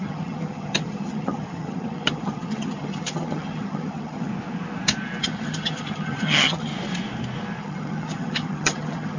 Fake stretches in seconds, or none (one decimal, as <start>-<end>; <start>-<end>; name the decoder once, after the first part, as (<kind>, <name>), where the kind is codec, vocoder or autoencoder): 0.0-4.3 (vocoder, HiFi-GAN); 5.2-6.7; 7.6-9.2